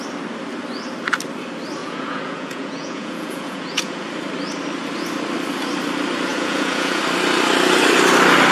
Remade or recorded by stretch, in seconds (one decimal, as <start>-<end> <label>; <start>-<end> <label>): 0.0-1.8 recorded; 1.8-4.0 remade; 4.0-6.3 recorded; 6.3-7.0 remade; 7.0-8.5 recorded